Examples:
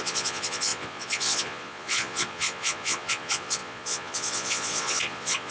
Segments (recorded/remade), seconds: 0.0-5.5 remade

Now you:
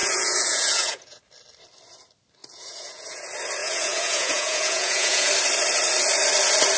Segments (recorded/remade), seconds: 0.0-1.2 remade; 1.2-2.4 recorded; 2.4-3.2 remade; 3.2-3.6 recorded; 3.6-5.3 remade; 5.3-6.8 recorded

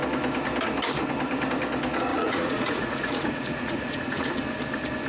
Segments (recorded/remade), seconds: 0.0-2.1 recorded; 2.1-4.3 remade; 4.3-5.1 recorded

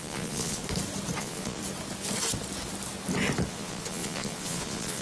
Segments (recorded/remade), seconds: 0.0-0.6 remade; 0.6-1.2 recorded; 1.2-1.6 remade; 1.6-3.5 recorded; 3.5-5.0 remade

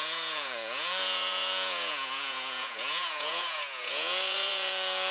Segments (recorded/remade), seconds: 0.0-5.1 remade

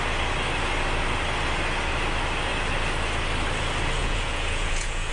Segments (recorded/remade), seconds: 0.0-4.0 recorded; 4.0-5.1 remade